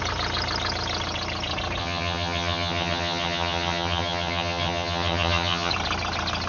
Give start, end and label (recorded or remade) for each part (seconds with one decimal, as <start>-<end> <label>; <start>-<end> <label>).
0.0-1.8 recorded; 1.8-5.7 remade; 5.7-6.5 recorded